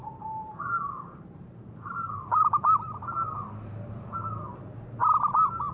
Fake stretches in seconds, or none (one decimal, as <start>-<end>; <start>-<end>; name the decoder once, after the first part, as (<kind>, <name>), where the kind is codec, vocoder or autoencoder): 0.0-5.0 (vocoder, BigVGAN v2)